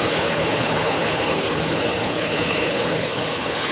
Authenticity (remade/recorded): remade